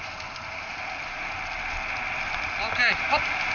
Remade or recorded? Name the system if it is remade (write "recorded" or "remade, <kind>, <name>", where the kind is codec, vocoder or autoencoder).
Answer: recorded